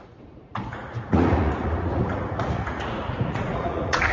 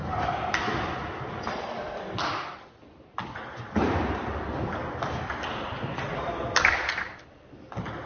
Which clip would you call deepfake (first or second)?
first